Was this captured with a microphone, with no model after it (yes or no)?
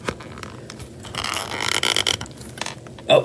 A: yes